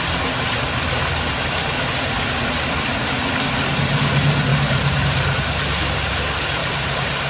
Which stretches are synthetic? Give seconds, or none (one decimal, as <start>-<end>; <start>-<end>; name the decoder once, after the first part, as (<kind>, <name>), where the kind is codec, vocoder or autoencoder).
4.5-5.4 (vocoder, BigVGAN v2); 6.6-7.3